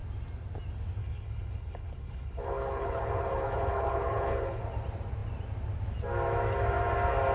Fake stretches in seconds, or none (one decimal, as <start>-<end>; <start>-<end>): 1.0-4.6